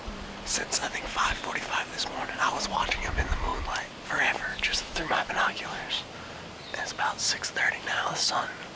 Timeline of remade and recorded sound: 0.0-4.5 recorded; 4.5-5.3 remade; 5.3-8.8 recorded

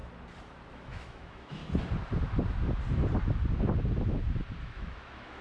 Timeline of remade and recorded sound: 0.0-0.7 recorded; 0.7-1.6 remade; 1.6-4.6 recorded; 4.6-5.4 remade

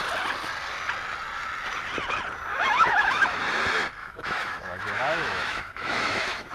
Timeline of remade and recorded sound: 0.0-2.5 recorded; 2.5-3.4 remade; 3.4-4.0 recorded; 4.0-6.5 remade

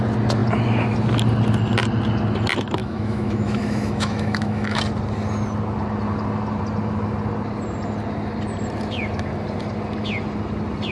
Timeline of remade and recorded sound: 0.0-2.8 recorded; 2.8-4.8 remade; 4.8-10.9 recorded

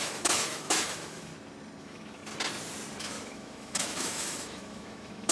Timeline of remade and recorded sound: 0.0-1.3 remade; 1.3-1.8 recorded; 1.8-2.2 remade; 2.2-3.0 recorded; 3.0-5.3 remade

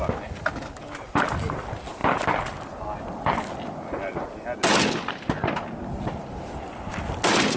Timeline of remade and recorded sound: 0.0-7.6 recorded

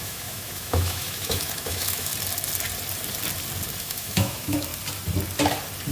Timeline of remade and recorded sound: 0.0-2.1 remade; 2.1-3.8 recorded; 3.8-4.7 remade; 4.7-5.9 recorded

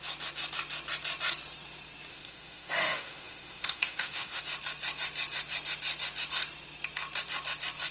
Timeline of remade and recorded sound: 0.0-2.1 recorded; 2.1-4.4 remade; 4.4-7.9 recorded